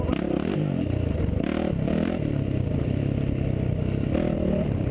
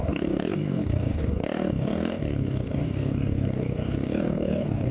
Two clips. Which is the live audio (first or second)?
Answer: first